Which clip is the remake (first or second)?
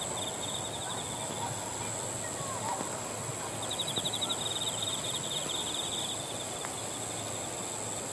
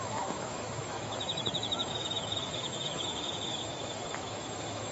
second